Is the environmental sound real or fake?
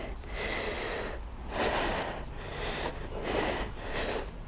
real